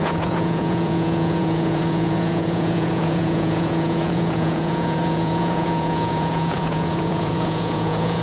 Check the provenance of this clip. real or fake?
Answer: fake